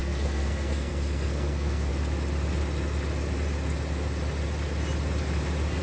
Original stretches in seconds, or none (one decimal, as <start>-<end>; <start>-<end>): 1.9-5.8